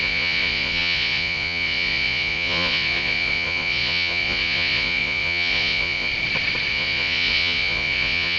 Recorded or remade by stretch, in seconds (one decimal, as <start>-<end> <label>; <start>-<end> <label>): 0.0-6.1 remade; 6.1-6.7 recorded; 6.7-8.4 remade